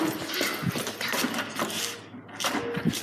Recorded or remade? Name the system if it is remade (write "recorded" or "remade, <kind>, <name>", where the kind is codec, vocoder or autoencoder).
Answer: recorded